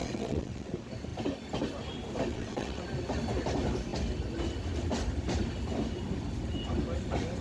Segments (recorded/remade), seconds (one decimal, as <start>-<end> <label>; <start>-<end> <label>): 0.0-0.7 remade; 0.7-2.3 recorded; 2.3-2.8 remade; 2.8-7.4 recorded